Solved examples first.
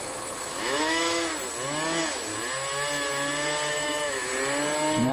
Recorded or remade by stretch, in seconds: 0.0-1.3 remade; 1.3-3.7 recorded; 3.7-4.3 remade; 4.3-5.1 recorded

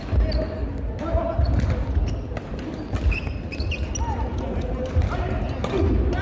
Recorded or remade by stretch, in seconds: 0.0-6.2 recorded

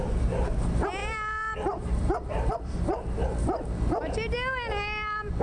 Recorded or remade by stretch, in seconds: 0.0-1.0 recorded; 1.0-2.5 remade; 2.5-5.4 recorded

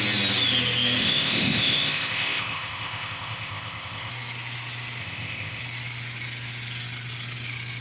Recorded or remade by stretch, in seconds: 0.0-1.0 recorded; 1.0-4.1 remade; 4.1-5.0 recorded; 5.0-5.6 remade; 5.6-7.8 recorded